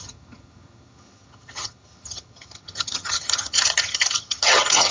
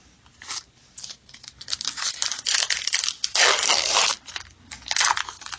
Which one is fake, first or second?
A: first